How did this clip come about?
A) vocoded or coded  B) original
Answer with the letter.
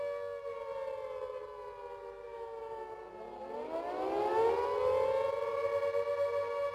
B